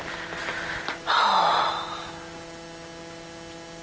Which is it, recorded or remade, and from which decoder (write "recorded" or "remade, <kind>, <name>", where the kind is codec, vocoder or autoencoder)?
recorded